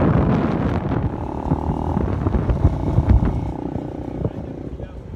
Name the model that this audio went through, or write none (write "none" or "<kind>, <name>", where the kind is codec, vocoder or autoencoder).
none